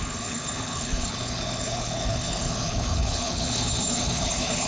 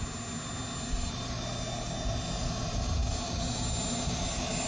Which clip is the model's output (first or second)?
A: first